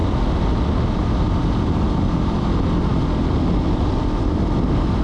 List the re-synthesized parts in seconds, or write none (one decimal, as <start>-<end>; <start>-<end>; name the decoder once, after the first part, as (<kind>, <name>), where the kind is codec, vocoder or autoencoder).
none

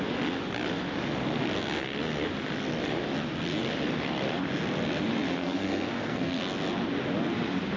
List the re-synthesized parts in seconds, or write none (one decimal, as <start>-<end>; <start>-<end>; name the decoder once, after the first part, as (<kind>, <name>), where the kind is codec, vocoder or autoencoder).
5.4-6.4 (codec, SNAC)